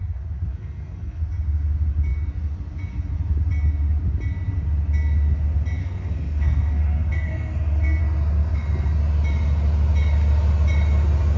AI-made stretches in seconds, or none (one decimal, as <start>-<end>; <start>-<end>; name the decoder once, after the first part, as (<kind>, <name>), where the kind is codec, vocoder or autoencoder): 0.5-1.2 (codec, SNAC); 5.8-8.0; 8.4-9.0